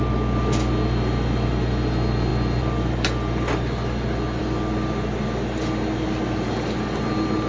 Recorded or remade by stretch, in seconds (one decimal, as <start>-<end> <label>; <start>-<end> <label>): 0.0-7.5 recorded